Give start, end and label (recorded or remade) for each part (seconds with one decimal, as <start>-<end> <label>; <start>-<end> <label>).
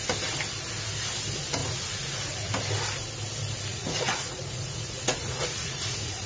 0.0-1.6 recorded; 1.6-2.5 remade; 2.5-3.7 recorded; 3.7-6.3 remade